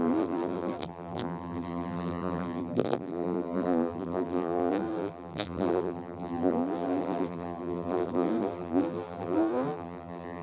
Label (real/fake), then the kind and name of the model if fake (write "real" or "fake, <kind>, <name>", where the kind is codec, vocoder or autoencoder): fake, vocoder, BigVGAN v2